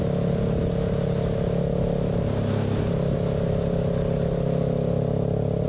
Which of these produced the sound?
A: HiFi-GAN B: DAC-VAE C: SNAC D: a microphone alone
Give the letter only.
D